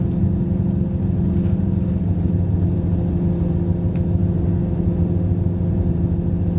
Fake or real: real